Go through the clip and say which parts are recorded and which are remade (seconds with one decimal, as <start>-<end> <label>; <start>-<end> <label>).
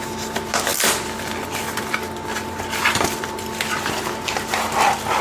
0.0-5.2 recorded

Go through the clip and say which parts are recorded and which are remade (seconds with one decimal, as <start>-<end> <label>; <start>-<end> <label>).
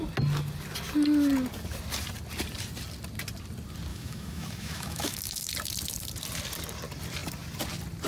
0.0-3.9 recorded; 3.9-5.5 remade; 5.5-8.1 recorded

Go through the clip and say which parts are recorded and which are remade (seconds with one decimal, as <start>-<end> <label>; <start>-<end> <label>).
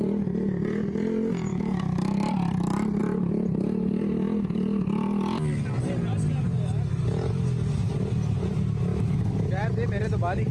0.0-1.5 recorded; 1.5-2.3 remade; 2.3-8.9 recorded; 8.9-9.5 remade; 9.5-10.5 recorded